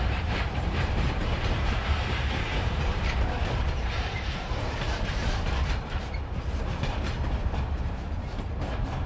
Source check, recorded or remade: remade